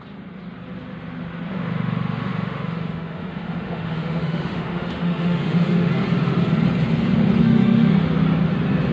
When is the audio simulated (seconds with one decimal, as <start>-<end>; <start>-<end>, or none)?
1.5-5.9; 7.4-7.9